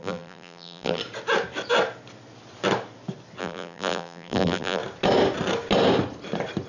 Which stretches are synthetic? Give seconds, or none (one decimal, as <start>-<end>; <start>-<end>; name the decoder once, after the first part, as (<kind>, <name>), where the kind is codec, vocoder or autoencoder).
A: 0.0-1.0 (vocoder, BigVGAN v2); 3.4-4.8